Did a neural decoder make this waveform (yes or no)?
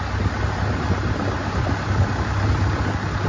no